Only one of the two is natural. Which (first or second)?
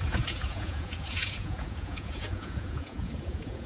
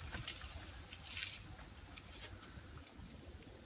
second